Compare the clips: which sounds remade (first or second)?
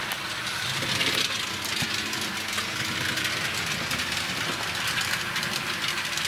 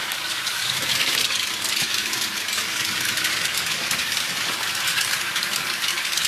second